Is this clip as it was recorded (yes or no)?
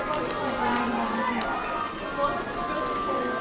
yes